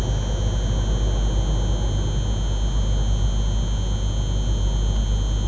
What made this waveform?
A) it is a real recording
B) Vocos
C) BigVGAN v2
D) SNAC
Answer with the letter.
A